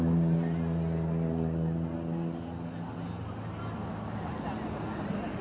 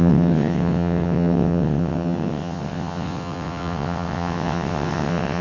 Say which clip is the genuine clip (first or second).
first